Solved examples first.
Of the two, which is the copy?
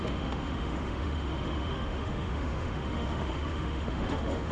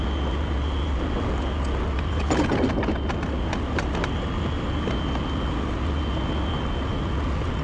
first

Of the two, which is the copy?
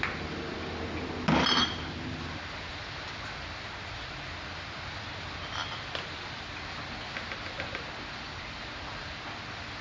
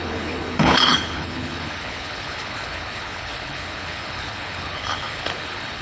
second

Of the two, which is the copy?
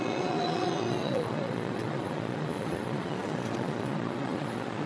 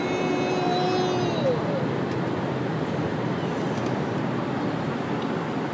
first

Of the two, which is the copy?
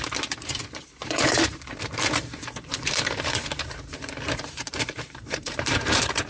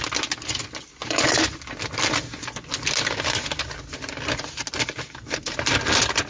first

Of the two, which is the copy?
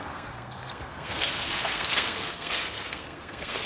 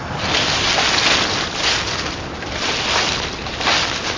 first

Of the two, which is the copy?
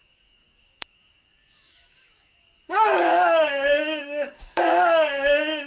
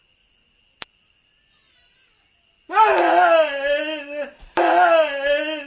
first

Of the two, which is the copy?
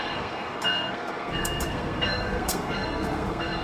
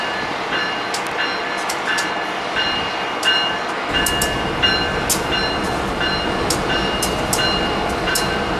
first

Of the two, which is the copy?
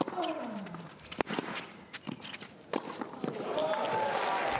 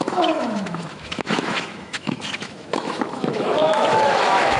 second